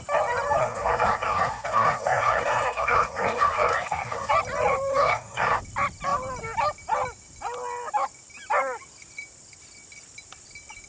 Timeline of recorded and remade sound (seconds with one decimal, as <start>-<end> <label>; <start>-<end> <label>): 0.0-0.6 recorded; 0.6-4.3 remade; 4.3-4.9 recorded; 4.9-5.6 remade; 5.6-10.9 recorded